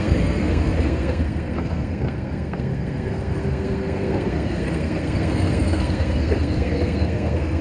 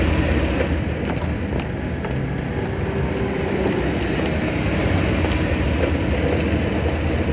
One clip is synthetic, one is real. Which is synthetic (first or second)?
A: first